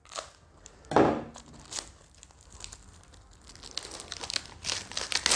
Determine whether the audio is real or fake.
real